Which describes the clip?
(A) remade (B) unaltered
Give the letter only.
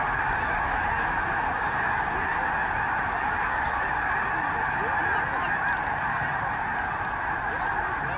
B